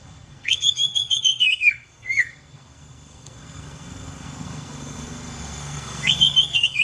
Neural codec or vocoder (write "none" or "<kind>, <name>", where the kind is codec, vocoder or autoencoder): codec, SNAC